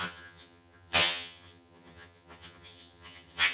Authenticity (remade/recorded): remade